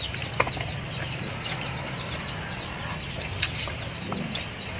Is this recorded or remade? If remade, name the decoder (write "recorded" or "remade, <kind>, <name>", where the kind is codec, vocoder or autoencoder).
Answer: recorded